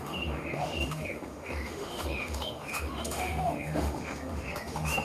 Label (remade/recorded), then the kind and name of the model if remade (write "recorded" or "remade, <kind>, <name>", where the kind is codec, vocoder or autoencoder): remade, autoencoder, DAC-VAE